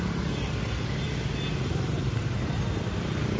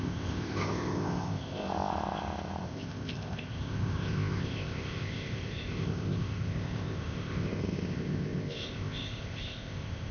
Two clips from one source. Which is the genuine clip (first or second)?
first